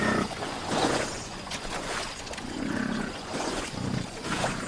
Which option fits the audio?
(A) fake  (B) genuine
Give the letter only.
A